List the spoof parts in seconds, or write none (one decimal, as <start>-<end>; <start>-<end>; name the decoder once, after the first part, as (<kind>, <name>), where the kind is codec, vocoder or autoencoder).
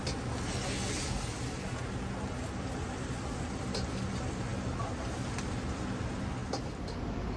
none